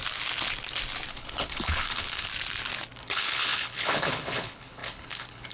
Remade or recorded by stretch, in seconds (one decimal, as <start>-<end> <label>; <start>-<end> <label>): 0.0-1.1 recorded; 1.1-2.3 remade; 2.3-3.0 recorded; 3.0-5.5 remade